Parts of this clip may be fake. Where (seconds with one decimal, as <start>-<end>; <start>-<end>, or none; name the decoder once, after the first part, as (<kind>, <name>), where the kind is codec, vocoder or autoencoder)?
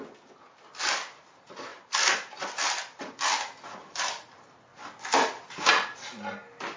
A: none